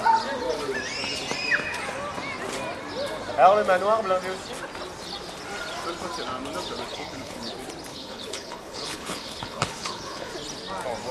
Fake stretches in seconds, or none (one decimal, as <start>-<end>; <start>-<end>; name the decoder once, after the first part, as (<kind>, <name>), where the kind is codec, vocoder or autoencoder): 6.9-7.5 (codec, HILCodec); 7.9-10.3

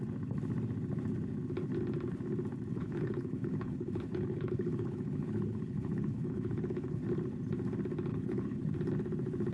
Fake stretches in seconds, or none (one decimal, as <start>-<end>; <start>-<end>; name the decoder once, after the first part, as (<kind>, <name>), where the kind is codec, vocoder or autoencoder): 2.7-7.0 (codec, HILCodec); 8.1-8.6

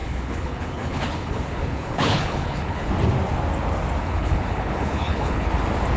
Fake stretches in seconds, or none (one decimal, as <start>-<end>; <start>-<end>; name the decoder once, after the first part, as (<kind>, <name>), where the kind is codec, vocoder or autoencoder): 0.0-2.9 (codec, HILCodec); 4.0-5.5

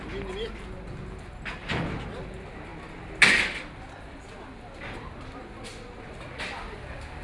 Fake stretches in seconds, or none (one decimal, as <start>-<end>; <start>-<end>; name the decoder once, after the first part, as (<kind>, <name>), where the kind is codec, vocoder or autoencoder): none

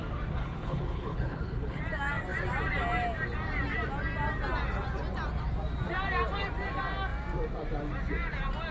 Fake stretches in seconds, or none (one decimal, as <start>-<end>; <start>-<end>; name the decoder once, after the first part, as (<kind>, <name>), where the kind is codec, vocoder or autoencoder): 0.4-1.8 (codec, HILCodec)

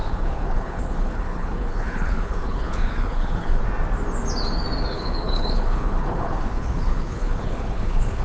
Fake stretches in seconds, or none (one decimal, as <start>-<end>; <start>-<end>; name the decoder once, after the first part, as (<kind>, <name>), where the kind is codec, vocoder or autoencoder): 0.0-3.6 (codec, HILCodec); 4.9-8.2

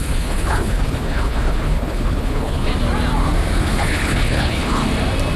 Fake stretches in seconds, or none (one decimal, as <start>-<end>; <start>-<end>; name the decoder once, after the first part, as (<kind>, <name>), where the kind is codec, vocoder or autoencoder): 0.0-2.7 (codec, HILCodec); 3.6-4.8

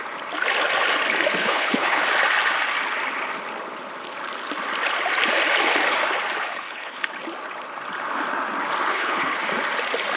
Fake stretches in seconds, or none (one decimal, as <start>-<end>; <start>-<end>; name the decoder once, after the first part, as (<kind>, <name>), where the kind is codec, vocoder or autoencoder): 1.4-2.0 (codec, HILCodec); 6.4-7.0; 8.9-9.4